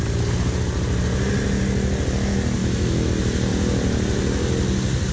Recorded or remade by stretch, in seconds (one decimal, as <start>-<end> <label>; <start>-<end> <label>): 0.0-2.6 recorded; 2.6-3.1 remade; 3.1-5.1 recorded